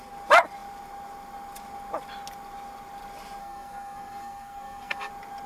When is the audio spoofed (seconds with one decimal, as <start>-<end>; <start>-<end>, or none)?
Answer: 3.4-5.1